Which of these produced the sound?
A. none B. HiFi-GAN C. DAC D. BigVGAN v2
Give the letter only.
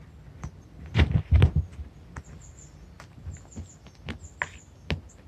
A